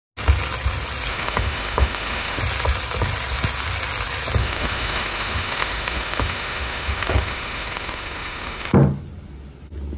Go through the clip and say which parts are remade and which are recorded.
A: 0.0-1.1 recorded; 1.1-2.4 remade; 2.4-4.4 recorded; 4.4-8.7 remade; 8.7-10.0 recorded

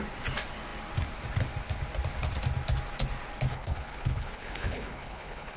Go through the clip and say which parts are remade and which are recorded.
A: 0.0-3.5 recorded; 3.5-5.6 remade

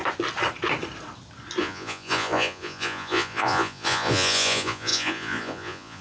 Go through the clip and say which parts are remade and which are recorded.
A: 0.0-1.6 recorded; 1.6-6.0 remade

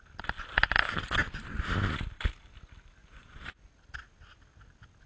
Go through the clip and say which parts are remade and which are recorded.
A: 0.0-3.0 recorded; 3.0-3.7 remade; 3.7-5.1 recorded

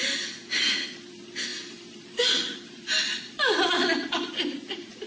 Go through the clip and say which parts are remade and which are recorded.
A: 0.0-1.5 recorded; 1.5-2.7 remade; 2.7-5.1 recorded

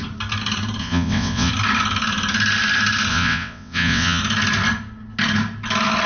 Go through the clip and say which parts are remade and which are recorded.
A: 0.0-0.8 recorded; 0.8-1.5 remade; 1.5-3.1 recorded; 3.1-4.2 remade; 4.2-6.1 recorded

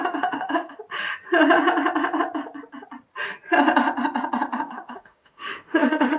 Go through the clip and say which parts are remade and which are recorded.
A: 0.0-0.8 remade; 0.8-4.5 recorded; 4.5-6.2 remade